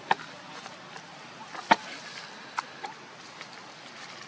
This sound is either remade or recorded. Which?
recorded